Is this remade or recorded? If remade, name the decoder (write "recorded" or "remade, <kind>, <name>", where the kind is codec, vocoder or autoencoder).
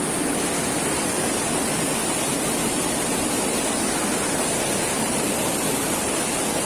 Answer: recorded